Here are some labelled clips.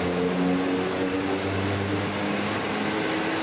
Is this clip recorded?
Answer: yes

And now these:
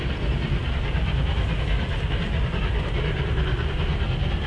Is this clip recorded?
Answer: yes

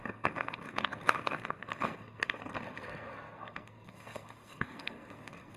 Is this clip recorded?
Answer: no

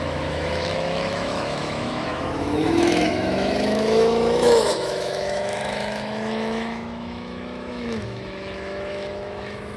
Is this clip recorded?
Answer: no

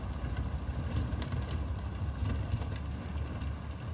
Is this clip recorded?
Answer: yes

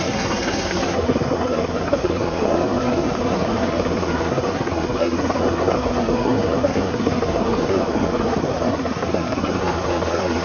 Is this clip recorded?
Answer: no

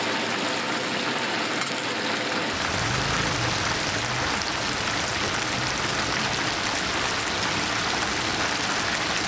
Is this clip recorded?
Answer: yes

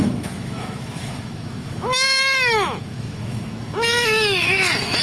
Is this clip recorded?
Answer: no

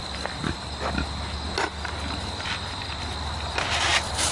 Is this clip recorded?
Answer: yes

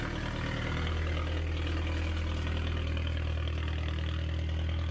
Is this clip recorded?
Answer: yes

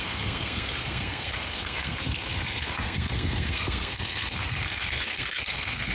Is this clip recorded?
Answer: no